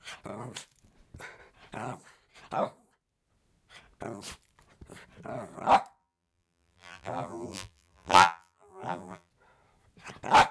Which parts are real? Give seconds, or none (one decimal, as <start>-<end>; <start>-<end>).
0.0-6.0; 9.3-10.5